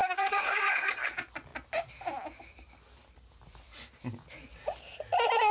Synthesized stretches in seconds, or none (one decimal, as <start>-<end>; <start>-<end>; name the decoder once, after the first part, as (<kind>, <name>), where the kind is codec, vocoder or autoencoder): 0.0-1.1 (codec, SNAC)